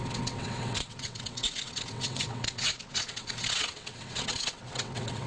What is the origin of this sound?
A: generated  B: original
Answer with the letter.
A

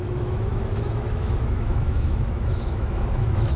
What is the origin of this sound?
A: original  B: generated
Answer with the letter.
B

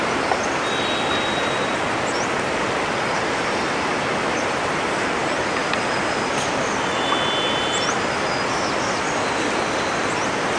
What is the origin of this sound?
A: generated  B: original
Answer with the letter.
B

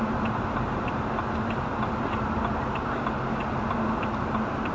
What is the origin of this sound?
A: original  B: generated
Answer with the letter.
A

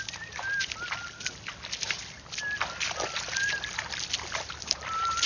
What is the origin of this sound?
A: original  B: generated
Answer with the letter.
A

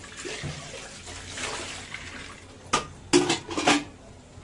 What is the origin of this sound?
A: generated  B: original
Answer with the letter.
B